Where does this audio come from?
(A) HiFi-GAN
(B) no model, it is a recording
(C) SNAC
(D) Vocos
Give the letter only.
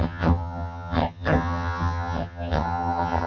A